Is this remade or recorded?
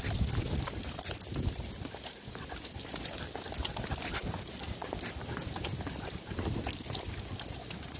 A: remade